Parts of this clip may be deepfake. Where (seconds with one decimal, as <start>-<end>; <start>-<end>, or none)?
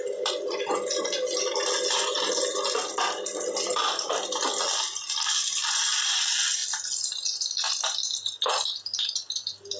none